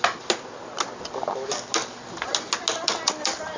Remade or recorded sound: recorded